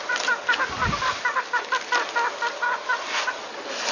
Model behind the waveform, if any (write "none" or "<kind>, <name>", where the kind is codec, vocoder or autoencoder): none